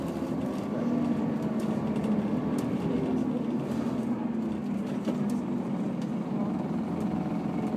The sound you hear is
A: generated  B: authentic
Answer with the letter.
B